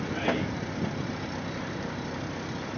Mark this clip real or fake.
real